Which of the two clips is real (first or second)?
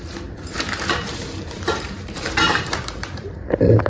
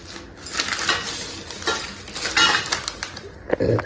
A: second